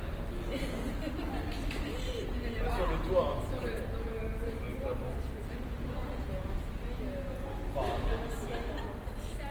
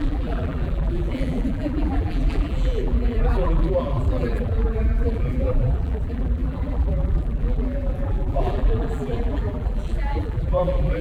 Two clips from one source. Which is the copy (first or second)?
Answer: second